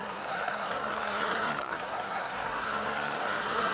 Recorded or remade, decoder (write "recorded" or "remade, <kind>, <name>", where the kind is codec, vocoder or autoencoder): remade, codec, SNAC